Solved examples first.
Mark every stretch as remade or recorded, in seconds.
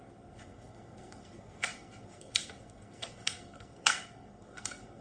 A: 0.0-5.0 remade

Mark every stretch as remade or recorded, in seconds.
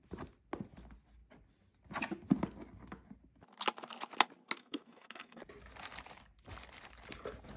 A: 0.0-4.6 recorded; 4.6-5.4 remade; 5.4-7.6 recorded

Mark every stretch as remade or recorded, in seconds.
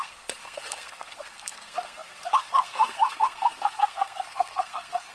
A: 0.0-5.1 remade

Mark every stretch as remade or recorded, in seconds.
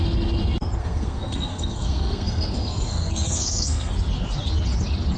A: 0.0-0.8 recorded; 0.8-3.9 remade; 3.9-5.2 recorded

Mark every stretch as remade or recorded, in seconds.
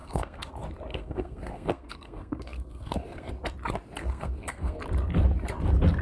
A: 0.0-0.5 remade; 0.5-0.9 recorded; 0.9-3.3 remade; 3.3-4.0 recorded; 4.0-4.8 remade; 4.8-6.0 recorded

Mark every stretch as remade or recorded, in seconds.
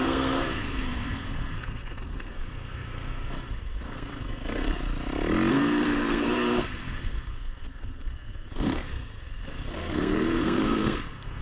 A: 0.0-4.8 remade; 4.8-5.5 recorded; 5.5-11.4 remade